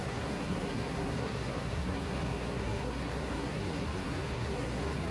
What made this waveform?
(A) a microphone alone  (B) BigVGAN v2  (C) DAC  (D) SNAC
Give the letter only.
D